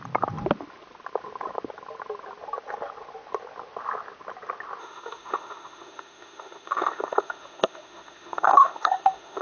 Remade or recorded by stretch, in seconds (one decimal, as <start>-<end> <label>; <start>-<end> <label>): 0.0-4.8 recorded; 4.8-9.4 remade